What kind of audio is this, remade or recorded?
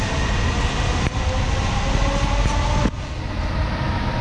recorded